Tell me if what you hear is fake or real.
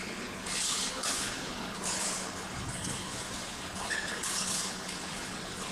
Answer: fake